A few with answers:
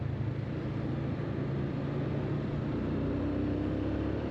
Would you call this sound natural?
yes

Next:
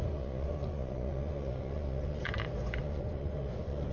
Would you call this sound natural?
no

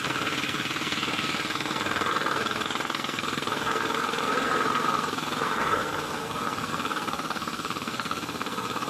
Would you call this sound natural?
no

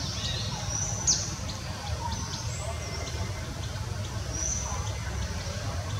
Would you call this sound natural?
yes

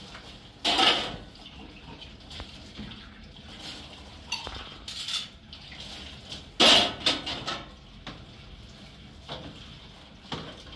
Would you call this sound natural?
yes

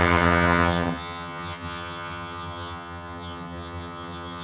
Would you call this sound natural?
no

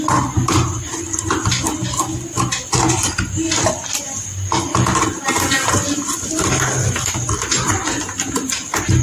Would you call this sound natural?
yes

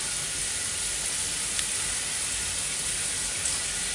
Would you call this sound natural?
yes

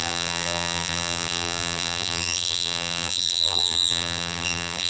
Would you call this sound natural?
no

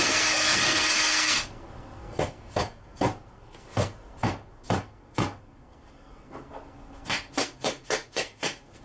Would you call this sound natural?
no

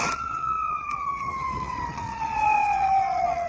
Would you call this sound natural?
no